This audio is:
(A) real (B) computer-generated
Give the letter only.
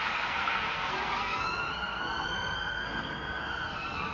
B